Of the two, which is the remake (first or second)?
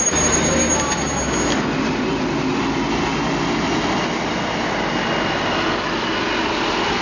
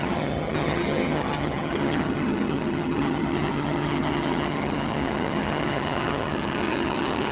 second